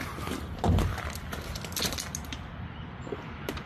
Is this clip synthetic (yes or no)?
no